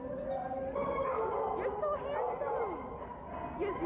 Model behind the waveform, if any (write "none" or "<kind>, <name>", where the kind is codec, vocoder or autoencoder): none